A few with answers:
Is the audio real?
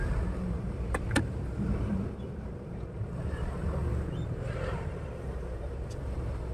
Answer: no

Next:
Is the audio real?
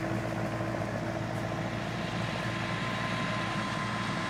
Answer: yes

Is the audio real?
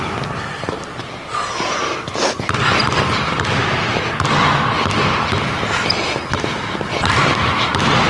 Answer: yes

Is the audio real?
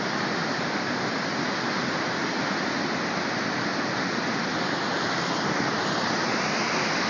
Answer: yes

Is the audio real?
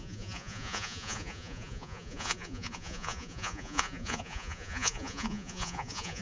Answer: no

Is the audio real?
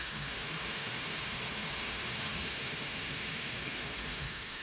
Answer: no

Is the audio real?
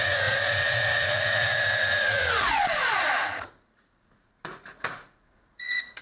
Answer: no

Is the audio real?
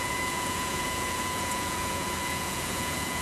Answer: no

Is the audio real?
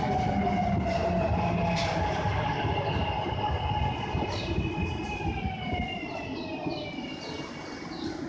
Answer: yes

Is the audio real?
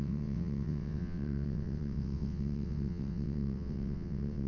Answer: no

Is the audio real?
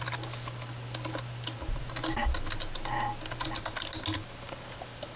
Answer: yes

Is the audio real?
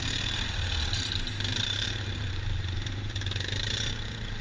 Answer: no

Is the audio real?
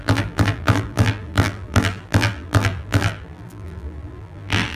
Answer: no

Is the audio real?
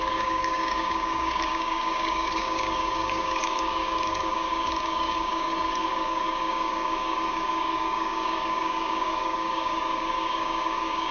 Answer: no